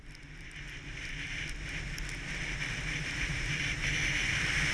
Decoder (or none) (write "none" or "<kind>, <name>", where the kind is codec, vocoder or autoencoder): none